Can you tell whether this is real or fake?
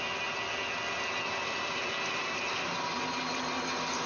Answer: real